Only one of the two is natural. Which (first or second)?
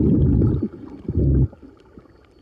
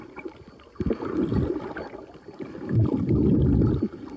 second